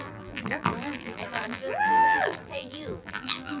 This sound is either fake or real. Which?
fake